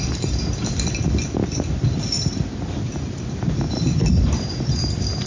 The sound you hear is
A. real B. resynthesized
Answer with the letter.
A